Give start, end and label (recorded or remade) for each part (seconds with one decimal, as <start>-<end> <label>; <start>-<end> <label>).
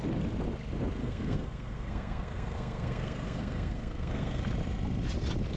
0.0-1.0 recorded; 1.0-4.4 remade; 4.4-5.6 recorded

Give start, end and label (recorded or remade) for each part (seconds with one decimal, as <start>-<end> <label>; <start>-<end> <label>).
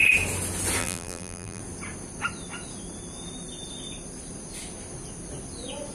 0.0-0.8 recorded; 0.8-1.6 remade; 1.6-5.9 recorded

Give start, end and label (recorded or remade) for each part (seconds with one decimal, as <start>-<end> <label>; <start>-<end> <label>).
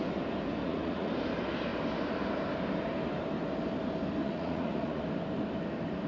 0.0-0.6 recorded; 0.6-1.1 remade; 1.1-4.2 recorded; 4.2-5.0 remade; 5.0-6.1 recorded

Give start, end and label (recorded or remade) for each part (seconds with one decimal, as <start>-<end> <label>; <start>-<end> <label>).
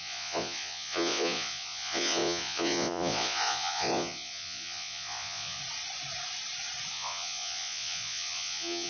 0.0-5.6 remade; 5.6-6.9 recorded; 6.9-8.9 remade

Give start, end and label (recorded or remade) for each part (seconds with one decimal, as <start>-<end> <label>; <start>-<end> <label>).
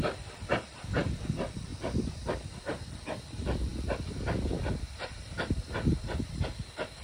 0.0-1.7 remade; 1.7-2.6 recorded; 2.6-3.7 remade; 3.7-4.6 recorded; 4.6-7.0 remade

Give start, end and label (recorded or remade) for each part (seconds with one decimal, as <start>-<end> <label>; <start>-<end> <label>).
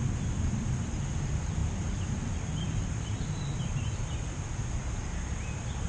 0.0-1.6 recorded; 1.6-4.6 remade; 4.6-5.9 recorded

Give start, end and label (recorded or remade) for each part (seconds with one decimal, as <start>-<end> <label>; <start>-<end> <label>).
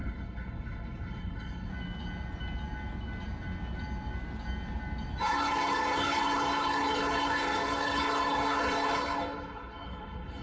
0.0-1.7 remade; 1.7-5.2 recorded; 5.2-10.4 remade